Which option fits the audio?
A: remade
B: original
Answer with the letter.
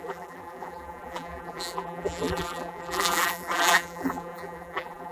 A